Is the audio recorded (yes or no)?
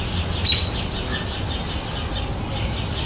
yes